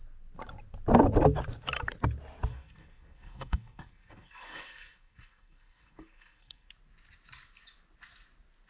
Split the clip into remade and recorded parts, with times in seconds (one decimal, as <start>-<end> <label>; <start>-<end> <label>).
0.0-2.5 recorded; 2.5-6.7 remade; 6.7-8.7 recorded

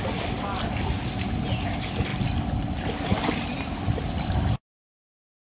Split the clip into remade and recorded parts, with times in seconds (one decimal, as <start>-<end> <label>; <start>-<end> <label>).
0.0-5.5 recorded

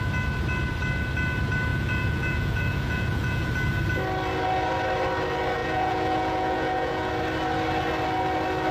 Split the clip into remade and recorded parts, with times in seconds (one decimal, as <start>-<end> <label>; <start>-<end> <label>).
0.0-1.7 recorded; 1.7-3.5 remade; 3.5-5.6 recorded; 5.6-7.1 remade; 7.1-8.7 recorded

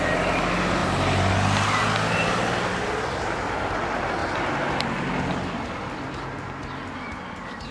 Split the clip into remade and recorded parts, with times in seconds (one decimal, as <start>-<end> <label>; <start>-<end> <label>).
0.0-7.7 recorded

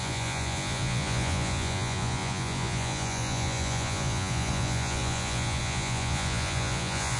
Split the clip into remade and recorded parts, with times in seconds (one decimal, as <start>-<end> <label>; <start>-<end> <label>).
0.0-7.2 remade